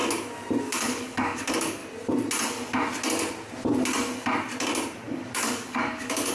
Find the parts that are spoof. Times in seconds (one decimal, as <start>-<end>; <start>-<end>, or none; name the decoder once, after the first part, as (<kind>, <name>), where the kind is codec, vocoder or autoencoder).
0.6-1.8 (codec, DAC); 5.1-6.3